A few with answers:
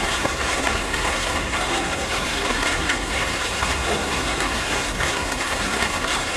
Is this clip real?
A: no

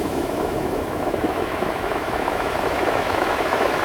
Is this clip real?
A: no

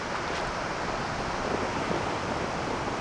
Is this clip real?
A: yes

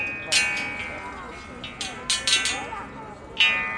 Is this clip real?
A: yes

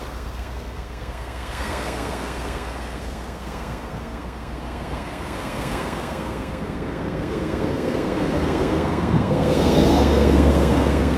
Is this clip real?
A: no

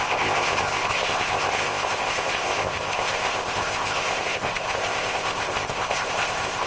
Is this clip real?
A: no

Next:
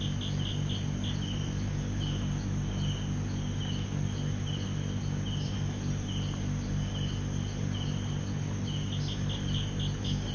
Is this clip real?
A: yes